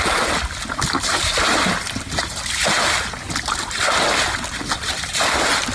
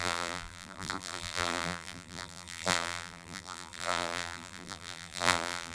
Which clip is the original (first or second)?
first